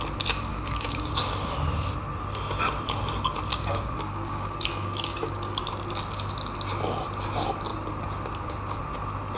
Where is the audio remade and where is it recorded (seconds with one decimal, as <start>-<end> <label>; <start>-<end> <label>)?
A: 0.0-0.5 recorded; 0.5-1.1 remade; 1.1-3.5 recorded; 3.5-5.6 remade; 5.6-9.4 recorded